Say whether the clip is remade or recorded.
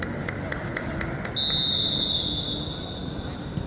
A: recorded